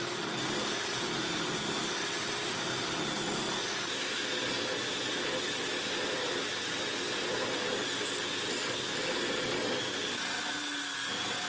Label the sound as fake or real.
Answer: real